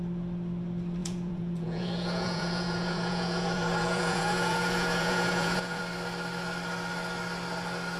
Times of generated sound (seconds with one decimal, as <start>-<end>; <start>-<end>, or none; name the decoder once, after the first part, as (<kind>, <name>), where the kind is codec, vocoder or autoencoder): 1.0-5.8 (vocoder, Vocos)